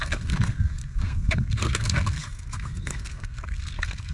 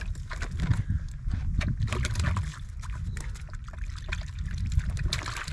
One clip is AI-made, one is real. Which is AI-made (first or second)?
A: first